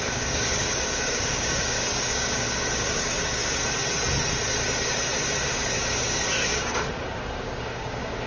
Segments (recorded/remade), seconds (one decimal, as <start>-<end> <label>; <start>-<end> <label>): 0.0-3.6 remade; 3.6-5.5 recorded; 5.5-8.3 remade